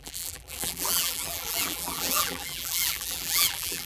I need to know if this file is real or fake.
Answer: fake